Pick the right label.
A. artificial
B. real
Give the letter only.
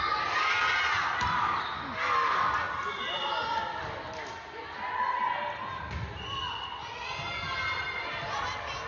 B